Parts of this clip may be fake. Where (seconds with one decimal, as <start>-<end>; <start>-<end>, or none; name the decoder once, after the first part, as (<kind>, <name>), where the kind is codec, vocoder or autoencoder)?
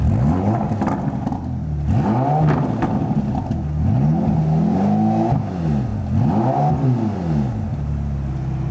none